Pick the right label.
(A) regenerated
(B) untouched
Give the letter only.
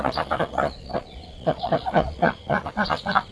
A